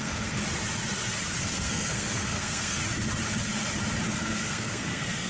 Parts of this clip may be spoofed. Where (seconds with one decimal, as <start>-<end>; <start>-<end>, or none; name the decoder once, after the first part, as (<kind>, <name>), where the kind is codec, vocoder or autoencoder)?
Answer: 0.0-0.4 (codec, SNAC); 1.4-2.8; 4.1-5.3

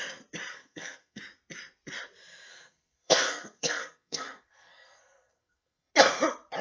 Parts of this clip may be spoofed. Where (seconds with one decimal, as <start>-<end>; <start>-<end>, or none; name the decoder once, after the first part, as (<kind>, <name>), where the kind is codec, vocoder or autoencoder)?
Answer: 0.5-1.2 (codec, SNAC); 2.5-5.9

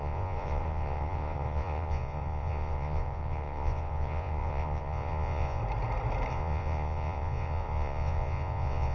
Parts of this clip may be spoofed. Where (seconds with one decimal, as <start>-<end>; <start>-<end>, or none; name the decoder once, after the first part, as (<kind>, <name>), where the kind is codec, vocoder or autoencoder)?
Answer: 0.0-5.6 (vocoder, Vocos); 6.3-8.9